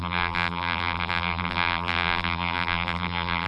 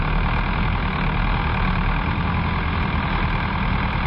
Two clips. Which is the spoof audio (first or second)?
first